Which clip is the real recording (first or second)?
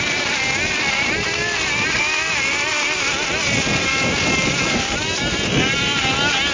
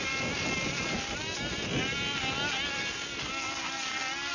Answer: second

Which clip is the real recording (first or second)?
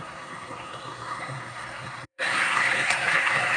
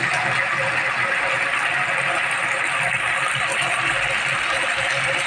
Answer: second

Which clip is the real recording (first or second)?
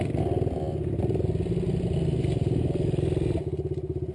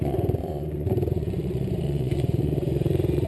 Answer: first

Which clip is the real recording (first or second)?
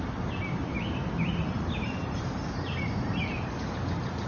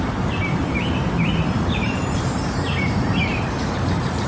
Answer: first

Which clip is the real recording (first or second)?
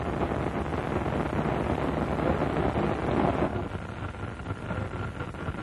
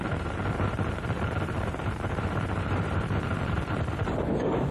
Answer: first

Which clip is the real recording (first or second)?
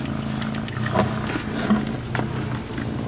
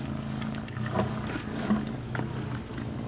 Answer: first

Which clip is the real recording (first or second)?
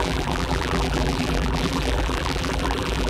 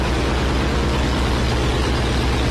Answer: second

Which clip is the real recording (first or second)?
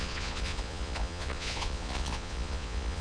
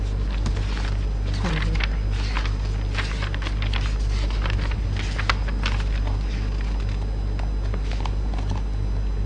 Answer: second